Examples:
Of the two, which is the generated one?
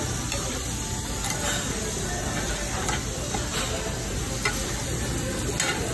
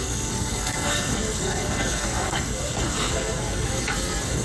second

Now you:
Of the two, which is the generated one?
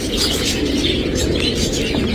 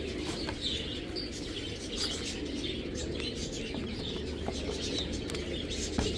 first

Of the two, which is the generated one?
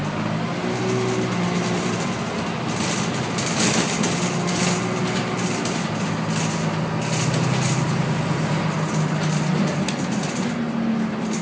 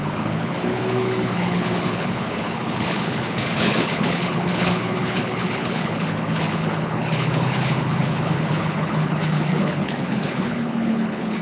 second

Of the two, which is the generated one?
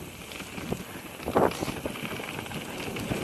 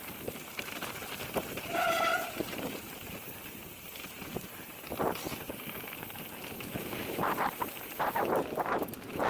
second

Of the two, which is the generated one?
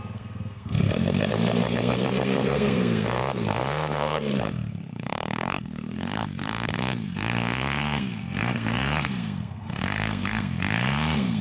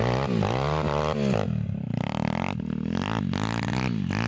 first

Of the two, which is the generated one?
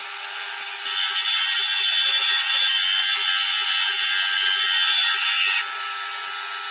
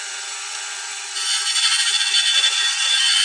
second